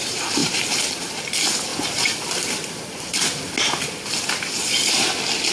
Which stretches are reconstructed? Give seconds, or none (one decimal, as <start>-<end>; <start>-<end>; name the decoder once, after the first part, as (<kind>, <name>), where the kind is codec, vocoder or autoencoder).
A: 1.7-3.2 (vocoder, BigVGAN v2)